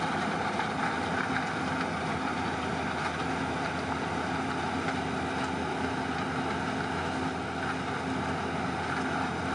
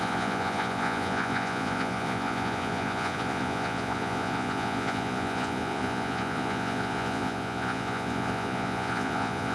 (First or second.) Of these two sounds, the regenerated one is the second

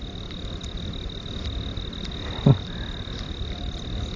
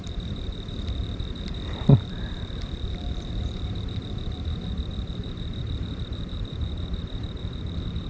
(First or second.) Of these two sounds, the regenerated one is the second